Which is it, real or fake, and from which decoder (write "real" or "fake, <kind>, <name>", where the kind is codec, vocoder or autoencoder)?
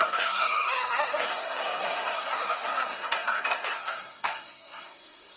fake, codec, SNAC